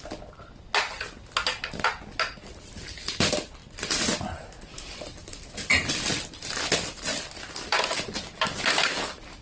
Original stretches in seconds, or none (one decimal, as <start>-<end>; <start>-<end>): 0.0-3.6; 7.4-9.4